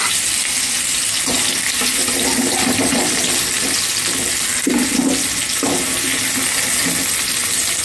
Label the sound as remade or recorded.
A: recorded